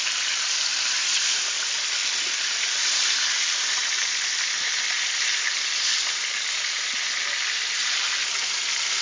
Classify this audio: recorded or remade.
recorded